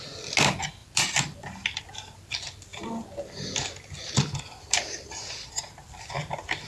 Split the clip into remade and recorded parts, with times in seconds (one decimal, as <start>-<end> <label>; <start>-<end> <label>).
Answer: 0.0-0.8 recorded; 0.8-1.8 remade; 1.8-6.7 recorded